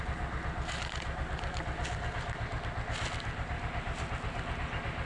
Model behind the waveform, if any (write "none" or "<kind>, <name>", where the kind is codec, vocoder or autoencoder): none